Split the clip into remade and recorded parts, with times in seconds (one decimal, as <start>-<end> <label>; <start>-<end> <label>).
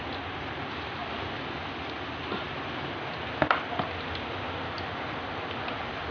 0.0-6.1 recorded